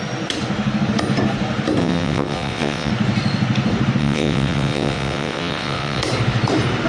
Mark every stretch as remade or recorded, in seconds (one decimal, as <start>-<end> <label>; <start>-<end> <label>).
0.0-1.8 recorded; 1.8-2.9 remade; 2.9-4.0 recorded; 4.0-6.0 remade; 6.0-6.9 recorded